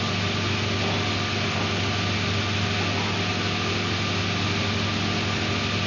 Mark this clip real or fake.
real